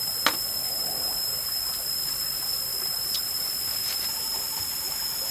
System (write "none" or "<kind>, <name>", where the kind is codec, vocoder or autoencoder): vocoder, BigVGAN v2